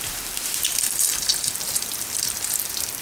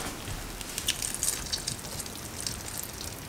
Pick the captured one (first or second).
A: second